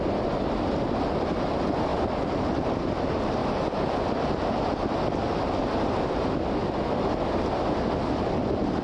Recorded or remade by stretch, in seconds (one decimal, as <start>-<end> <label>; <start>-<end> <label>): 0.0-1.9 recorded; 1.9-2.6 remade; 2.6-6.6 recorded; 6.6-7.3 remade; 7.3-8.8 recorded